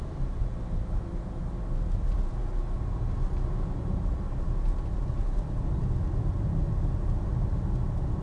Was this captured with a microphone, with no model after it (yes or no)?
yes